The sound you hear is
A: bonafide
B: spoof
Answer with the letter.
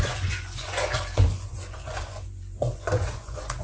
B